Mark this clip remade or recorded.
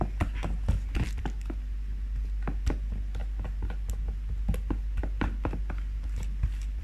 recorded